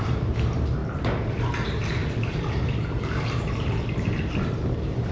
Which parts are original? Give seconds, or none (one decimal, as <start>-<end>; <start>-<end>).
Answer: 0.8-1.3